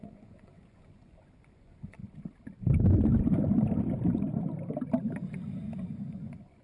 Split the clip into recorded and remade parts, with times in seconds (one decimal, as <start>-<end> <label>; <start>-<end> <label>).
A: 0.0-2.0 remade; 2.0-6.0 recorded; 6.0-6.6 remade